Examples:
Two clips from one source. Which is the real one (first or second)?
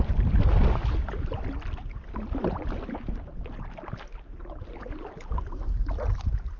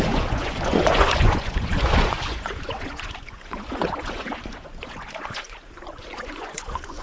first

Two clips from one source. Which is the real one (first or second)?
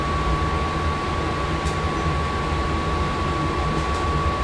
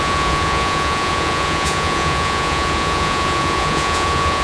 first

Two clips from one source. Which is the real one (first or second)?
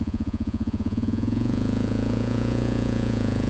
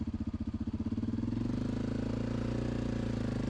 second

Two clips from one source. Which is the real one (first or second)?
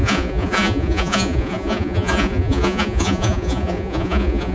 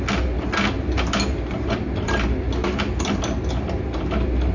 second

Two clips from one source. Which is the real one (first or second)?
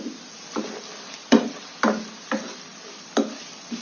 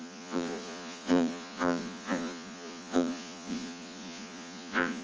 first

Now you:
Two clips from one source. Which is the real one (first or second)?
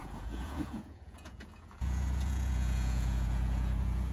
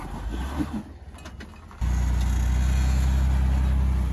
second